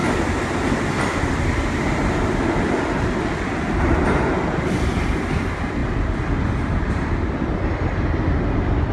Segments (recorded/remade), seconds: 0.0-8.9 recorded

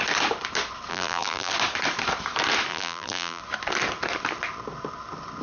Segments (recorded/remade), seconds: 0.0-0.9 recorded; 0.9-1.5 remade; 1.5-2.7 recorded; 2.7-3.4 remade; 3.4-5.4 recorded

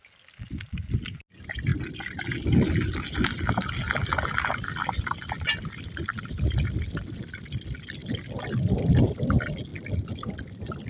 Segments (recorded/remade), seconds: 0.0-10.9 recorded